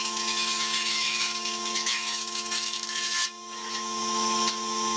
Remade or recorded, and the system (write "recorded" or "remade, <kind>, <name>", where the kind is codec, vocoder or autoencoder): remade, autoencoder, DAC-VAE